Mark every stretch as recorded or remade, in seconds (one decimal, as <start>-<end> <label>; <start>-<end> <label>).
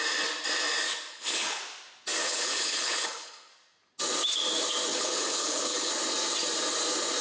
0.0-1.1 recorded; 1.1-1.6 remade; 1.6-2.2 recorded; 2.2-3.5 remade; 3.5-4.9 recorded; 4.9-5.9 remade; 5.9-7.2 recorded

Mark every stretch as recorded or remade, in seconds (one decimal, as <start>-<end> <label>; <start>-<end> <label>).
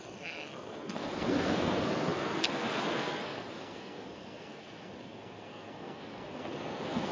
0.0-7.1 remade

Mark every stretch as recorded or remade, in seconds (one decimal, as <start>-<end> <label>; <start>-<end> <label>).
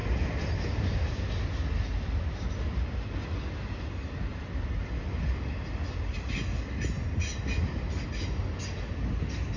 0.0-9.6 recorded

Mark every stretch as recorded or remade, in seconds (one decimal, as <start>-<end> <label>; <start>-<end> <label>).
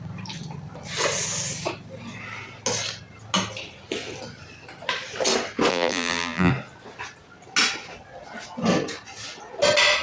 0.0-5.7 recorded; 5.7-6.5 remade; 6.5-10.0 recorded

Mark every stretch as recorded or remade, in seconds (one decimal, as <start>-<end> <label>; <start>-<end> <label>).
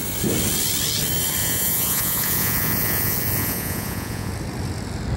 0.0-1.4 recorded; 1.4-4.3 remade; 4.3-5.2 recorded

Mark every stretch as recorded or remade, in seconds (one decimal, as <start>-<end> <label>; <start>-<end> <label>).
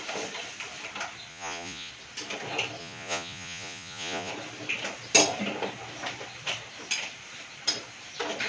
0.0-1.3 recorded; 1.3-1.9 remade; 1.9-2.8 recorded; 2.8-4.3 remade; 4.3-8.5 recorded